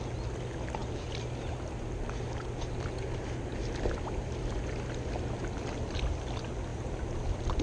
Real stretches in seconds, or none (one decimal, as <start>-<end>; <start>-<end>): 0.0-7.6